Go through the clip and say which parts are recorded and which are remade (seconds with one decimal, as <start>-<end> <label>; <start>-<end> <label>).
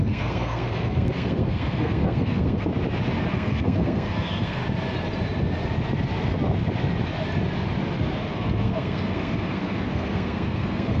0.0-2.7 remade; 2.7-3.3 recorded; 3.3-4.6 remade; 4.6-8.3 recorded; 8.3-11.0 remade